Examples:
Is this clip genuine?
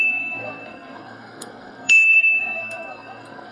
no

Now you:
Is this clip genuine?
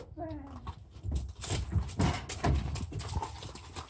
yes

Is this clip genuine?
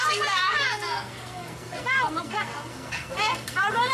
no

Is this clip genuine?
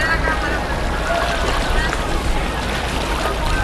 yes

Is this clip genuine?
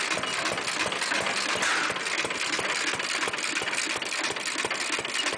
yes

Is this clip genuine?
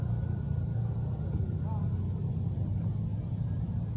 yes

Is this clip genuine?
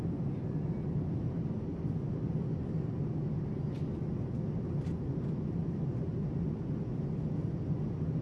yes